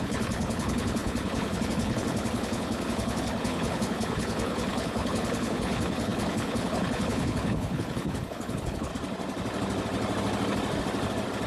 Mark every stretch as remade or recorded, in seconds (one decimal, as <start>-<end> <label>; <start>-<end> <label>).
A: 0.0-8.9 remade; 8.9-11.5 recorded